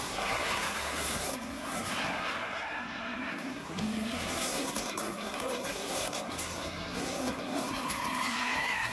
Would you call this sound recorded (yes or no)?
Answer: no